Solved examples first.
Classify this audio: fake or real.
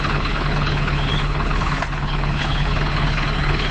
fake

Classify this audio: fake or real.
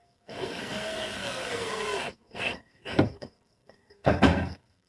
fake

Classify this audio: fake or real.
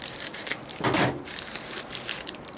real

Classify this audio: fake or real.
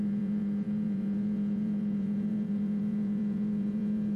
fake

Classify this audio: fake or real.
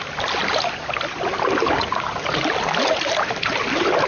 real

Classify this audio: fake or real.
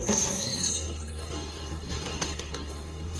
fake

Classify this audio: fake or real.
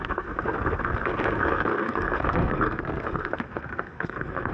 fake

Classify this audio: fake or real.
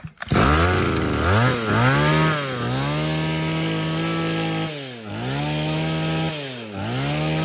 real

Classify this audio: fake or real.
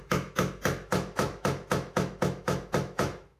fake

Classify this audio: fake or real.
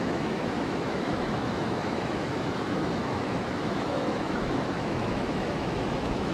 fake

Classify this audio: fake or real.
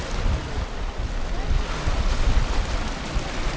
real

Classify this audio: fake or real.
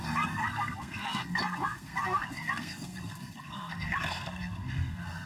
fake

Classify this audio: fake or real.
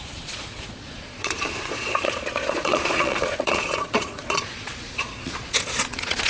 fake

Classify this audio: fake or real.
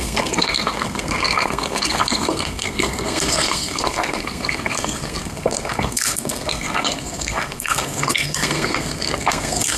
fake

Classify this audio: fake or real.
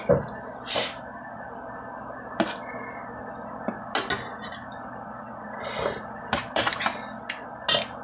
real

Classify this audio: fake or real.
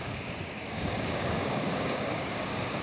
fake